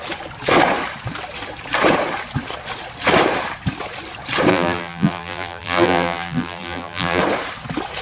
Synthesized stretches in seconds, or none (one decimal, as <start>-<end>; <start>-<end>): 4.5-7.2